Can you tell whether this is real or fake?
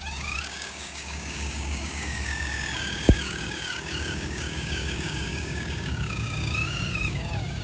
fake